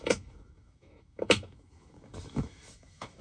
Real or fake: fake